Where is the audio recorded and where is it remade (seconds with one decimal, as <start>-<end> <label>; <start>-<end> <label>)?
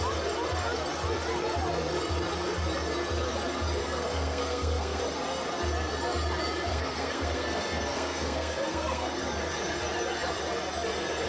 0.0-3.8 recorded; 3.8-5.0 remade; 5.0-6.7 recorded; 6.7-9.2 remade; 9.2-11.3 recorded